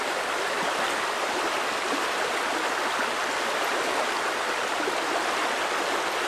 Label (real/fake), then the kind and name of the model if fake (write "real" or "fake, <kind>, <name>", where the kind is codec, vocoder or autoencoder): real